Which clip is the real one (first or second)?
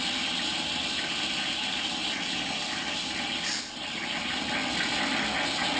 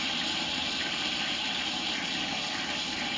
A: first